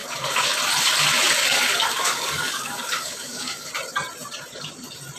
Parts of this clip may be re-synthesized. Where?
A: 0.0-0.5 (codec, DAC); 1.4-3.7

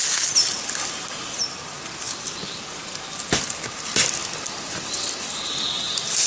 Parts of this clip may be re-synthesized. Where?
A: none

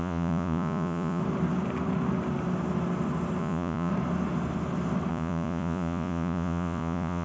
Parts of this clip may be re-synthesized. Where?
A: 0.0-1.2 (vocoder, Vocos); 3.4-3.9; 5.1-7.2

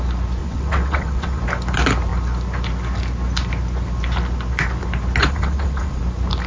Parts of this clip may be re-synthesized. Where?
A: 0.4-1.4 (vocoder, WaveNeXt); 5.2-6.0